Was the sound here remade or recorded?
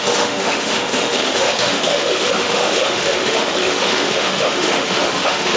remade